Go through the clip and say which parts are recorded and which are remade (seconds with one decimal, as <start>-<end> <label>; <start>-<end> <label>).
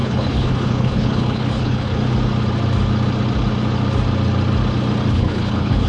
0.0-2.0 remade; 2.0-5.1 recorded; 5.1-5.9 remade